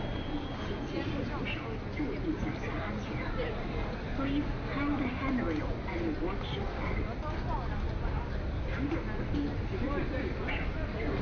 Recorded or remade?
recorded